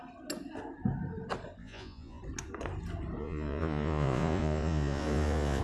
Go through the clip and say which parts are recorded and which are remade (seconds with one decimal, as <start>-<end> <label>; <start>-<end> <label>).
0.0-1.6 recorded; 1.6-2.2 remade; 2.2-3.2 recorded; 3.2-5.6 remade